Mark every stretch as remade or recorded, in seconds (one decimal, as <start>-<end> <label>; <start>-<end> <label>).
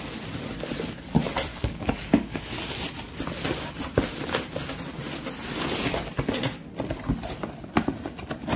0.0-1.5 recorded; 1.5-2.4 remade; 2.4-8.6 recorded